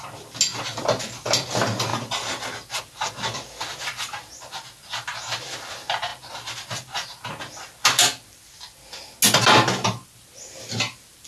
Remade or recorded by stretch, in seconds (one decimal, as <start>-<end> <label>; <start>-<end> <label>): 0.0-11.3 recorded